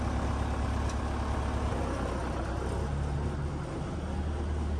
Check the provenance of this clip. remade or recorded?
recorded